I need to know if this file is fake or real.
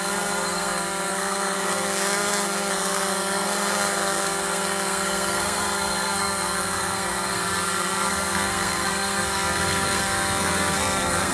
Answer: fake